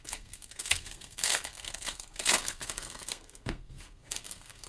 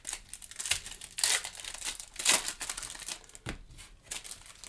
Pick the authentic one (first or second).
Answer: second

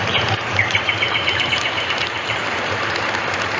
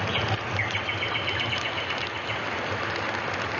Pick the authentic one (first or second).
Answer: second